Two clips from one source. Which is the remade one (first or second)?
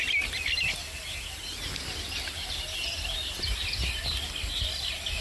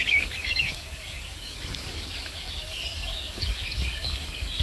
second